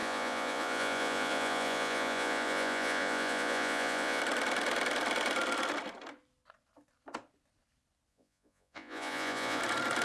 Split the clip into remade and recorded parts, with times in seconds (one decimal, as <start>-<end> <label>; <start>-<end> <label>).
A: 0.0-4.2 remade; 4.2-8.1 recorded; 8.1-9.6 remade; 9.6-10.0 recorded